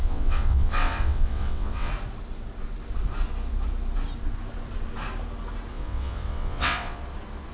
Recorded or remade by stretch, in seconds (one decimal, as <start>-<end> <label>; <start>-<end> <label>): 0.0-1.9 remade; 1.9-5.7 recorded; 5.7-7.0 remade; 7.0-7.5 recorded